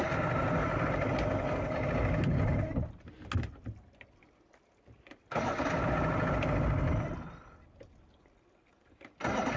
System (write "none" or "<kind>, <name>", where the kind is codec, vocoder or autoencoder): none